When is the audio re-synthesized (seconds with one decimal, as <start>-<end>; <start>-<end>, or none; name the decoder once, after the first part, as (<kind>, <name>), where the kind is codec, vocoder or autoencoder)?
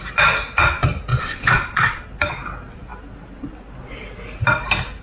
1.1-2.0 (vocoder, Vocos)